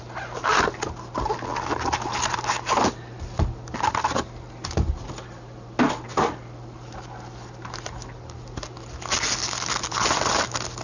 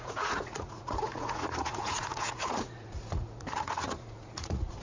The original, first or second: first